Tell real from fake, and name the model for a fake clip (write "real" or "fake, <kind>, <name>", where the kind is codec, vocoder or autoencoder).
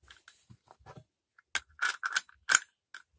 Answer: real